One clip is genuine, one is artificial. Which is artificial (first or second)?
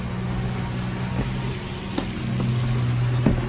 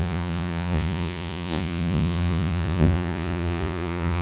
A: second